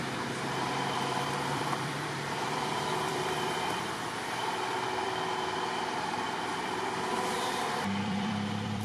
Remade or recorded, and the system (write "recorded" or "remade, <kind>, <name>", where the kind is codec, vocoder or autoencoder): remade, vocoder, BigVGAN v2